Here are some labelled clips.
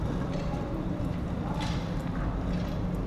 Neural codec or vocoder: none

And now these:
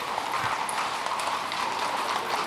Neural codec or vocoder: none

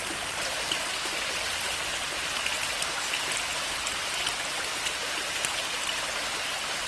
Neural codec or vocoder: none